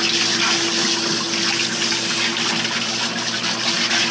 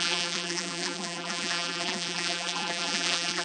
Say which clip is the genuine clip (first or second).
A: first